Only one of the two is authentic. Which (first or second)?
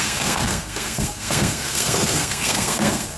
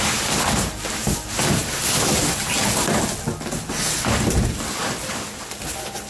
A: second